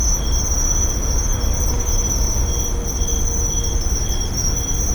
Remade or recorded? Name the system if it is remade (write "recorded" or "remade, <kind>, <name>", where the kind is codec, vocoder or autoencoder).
recorded